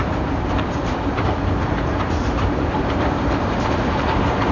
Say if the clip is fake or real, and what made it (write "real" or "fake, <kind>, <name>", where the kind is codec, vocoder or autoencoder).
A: fake, vocoder, BigVGAN v2